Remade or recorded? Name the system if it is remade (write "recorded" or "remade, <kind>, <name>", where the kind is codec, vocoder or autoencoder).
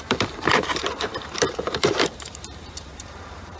remade, vocoder, BigVGAN v2